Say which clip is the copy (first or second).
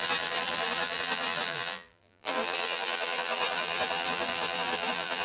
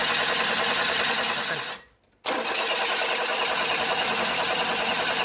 first